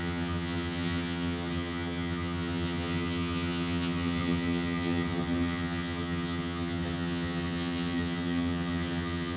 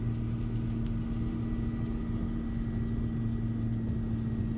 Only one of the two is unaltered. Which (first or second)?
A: second